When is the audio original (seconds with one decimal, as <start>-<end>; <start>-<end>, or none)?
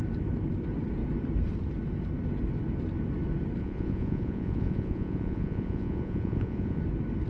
0.0-3.6; 6.8-7.3